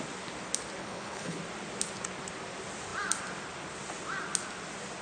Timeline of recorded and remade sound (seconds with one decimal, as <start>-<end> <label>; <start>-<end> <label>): 0.0-0.8 recorded; 0.8-1.4 remade; 1.4-5.0 recorded